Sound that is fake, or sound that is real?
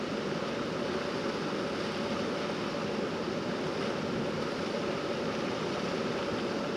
real